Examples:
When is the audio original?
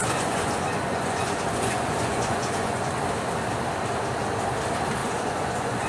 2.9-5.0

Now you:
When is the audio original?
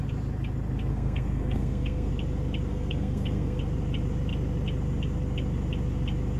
0.0-0.9; 2.1-2.7; 3.6-6.4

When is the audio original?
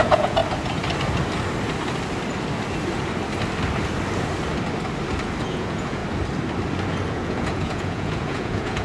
0.4-5.4; 6.0-7.1